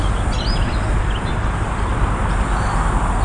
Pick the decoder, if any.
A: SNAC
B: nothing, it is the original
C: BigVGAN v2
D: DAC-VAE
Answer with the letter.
B